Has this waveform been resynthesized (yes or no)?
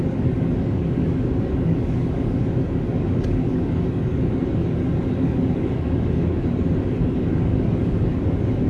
yes